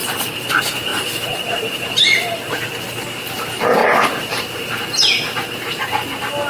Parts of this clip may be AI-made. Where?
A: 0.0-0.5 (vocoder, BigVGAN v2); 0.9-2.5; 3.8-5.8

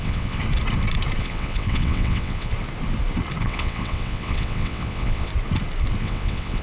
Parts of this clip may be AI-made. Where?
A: 0.0-0.4 (vocoder, WaveNeXt); 1.2-2.5; 3.4-5.3; 6.0-6.6

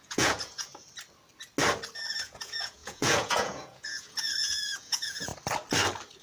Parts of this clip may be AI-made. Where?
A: 0.0-0.7 (vocoder, Vocos); 2.1-5.3

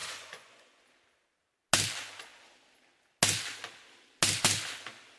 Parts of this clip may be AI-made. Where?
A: 0.0-0.8 (vocoder, Vocos)

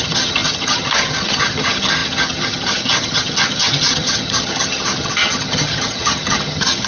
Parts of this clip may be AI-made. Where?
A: 0.0-6.9 (vocoder, HiFi-GAN)

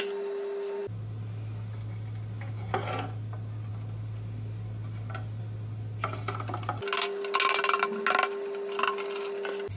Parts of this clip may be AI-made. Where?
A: none